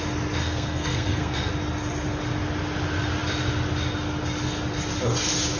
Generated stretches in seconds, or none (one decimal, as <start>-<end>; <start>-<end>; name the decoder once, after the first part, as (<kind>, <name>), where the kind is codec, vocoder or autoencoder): 0.4-1.5 (codec, SNAC)